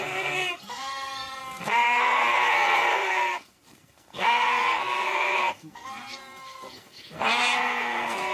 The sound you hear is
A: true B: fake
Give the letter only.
B